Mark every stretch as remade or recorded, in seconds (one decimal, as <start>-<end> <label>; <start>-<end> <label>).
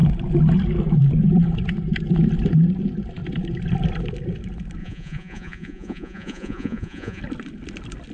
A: 0.0-4.8 recorded; 4.8-7.2 remade; 7.2-8.1 recorded